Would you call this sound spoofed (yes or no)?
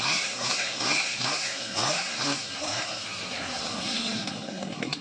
yes